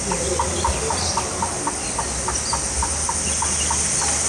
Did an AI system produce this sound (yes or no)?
no